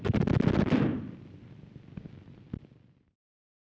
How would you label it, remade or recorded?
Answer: recorded